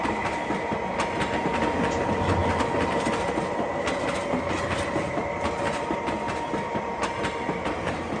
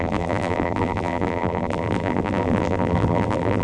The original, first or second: first